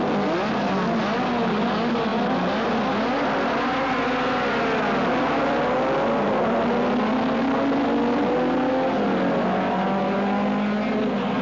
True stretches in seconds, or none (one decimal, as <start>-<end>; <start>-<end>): 0.0-11.4